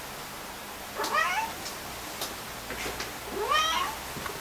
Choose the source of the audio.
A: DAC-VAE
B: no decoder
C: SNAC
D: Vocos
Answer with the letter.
B